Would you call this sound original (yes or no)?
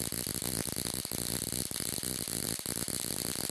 yes